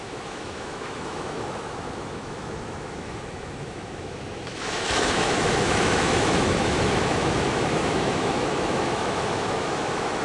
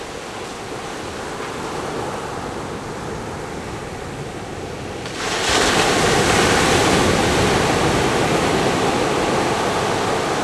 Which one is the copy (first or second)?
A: first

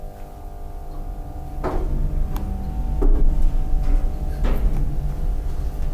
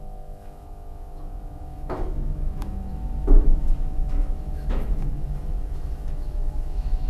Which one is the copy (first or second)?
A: second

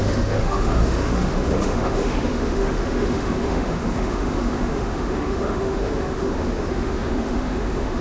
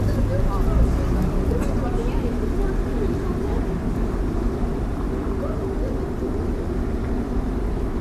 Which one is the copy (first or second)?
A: first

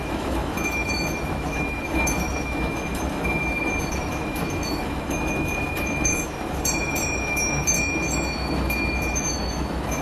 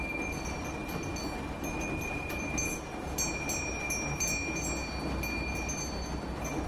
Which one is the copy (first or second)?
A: first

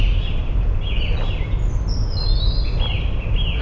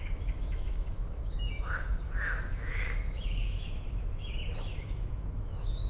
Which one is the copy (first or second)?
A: second